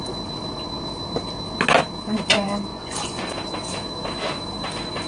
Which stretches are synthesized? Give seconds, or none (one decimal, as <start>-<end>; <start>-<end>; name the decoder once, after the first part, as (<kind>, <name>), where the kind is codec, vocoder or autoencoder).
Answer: 2.7-3.3 (vocoder, Vocos)